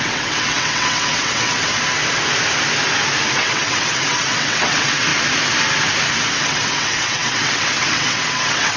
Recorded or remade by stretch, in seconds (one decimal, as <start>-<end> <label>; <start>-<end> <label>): 0.0-1.7 remade; 1.7-3.3 recorded; 3.3-5.1 remade; 5.1-6.4 recorded; 6.4-8.8 remade